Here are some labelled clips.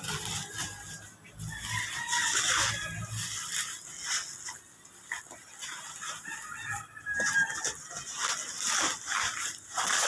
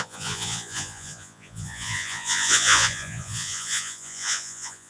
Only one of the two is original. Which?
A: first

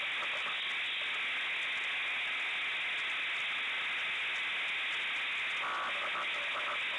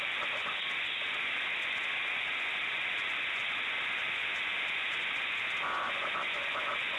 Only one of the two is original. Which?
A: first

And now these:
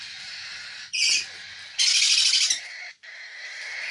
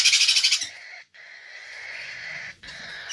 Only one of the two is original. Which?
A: first